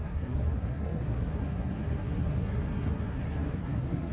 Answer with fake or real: fake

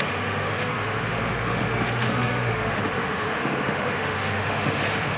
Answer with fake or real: fake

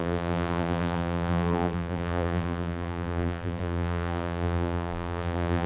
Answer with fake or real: fake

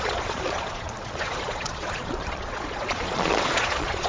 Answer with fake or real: fake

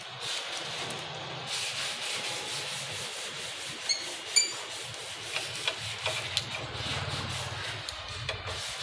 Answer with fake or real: real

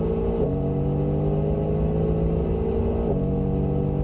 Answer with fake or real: real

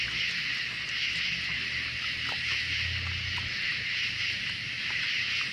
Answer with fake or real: real